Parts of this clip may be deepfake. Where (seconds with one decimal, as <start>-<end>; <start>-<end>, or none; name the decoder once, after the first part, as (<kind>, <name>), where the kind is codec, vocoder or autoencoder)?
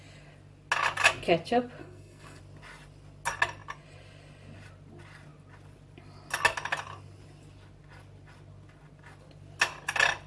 1.8-2.4 (codec, SNAC)